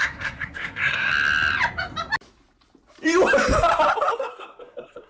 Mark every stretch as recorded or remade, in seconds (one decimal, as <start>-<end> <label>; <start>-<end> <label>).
0.0-1.1 remade; 1.1-4.2 recorded; 4.2-5.1 remade